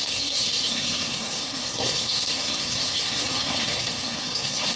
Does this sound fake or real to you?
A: fake